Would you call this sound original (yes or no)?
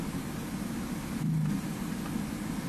yes